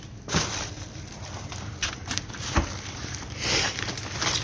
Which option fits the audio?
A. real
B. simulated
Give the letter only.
B